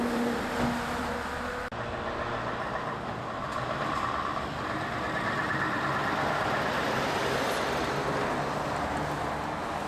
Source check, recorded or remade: recorded